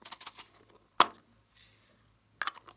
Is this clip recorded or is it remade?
recorded